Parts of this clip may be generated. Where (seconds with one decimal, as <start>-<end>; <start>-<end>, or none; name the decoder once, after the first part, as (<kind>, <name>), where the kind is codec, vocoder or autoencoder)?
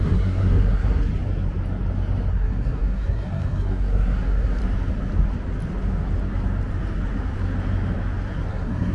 0.0-1.1 (codec, SNAC); 2.3-4.6; 8.5-8.9